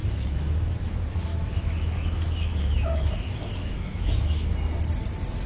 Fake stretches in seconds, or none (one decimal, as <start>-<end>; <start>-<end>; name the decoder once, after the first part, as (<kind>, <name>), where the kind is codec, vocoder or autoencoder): 0.0-0.7 (autoencoder, DAC-VAE); 1.3-4.5